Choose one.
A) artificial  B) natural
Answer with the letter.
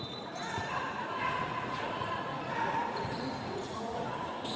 A